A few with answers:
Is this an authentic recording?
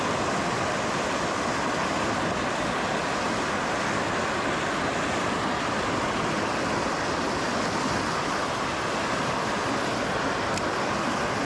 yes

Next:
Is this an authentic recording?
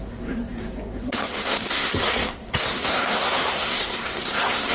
no